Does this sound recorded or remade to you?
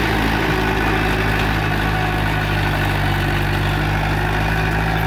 recorded